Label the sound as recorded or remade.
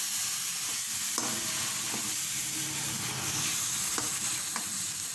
recorded